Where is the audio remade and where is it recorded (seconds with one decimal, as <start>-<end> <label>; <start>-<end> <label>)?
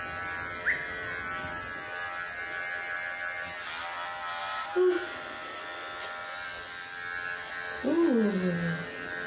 0.0-4.4 recorded; 4.4-5.6 remade; 5.6-9.3 recorded